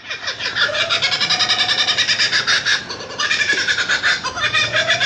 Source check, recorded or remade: recorded